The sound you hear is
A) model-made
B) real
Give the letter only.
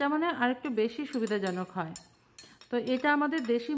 B